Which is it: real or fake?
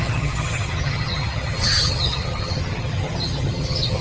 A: fake